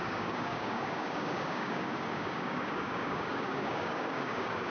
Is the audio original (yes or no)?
no